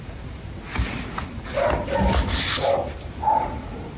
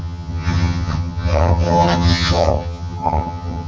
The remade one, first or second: second